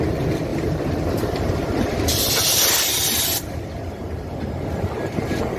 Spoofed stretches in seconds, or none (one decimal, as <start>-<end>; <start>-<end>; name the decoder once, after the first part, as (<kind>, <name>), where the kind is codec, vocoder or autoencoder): 0.5-3.9 (vocoder, BigVGAN v2)